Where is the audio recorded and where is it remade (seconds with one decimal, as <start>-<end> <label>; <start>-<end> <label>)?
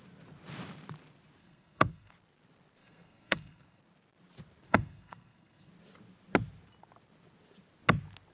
0.0-1.4 recorded; 1.4-2.1 remade; 2.1-2.8 recorded; 2.8-3.8 remade; 3.8-4.7 recorded; 4.7-5.7 remade; 5.7-8.3 recorded